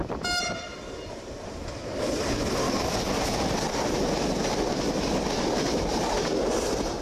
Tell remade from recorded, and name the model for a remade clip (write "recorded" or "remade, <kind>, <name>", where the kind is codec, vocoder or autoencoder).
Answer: recorded